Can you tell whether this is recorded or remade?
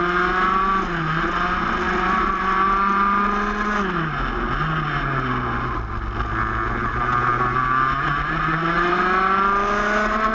recorded